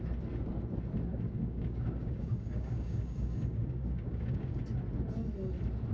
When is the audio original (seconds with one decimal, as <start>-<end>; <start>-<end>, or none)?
0.0-1.1; 4.6-5.9